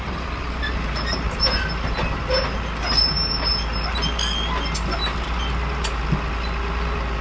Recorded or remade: recorded